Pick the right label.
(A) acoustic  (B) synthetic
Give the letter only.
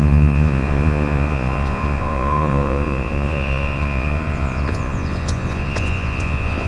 B